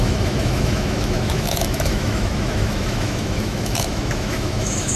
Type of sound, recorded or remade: remade